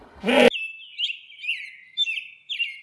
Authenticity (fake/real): real